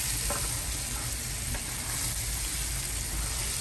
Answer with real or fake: real